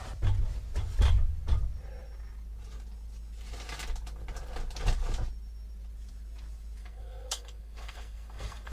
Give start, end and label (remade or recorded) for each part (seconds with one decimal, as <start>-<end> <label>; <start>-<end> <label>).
0.0-6.8 recorded; 6.8-8.7 remade